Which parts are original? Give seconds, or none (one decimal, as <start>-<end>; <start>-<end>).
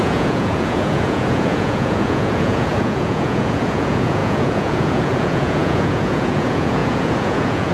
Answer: none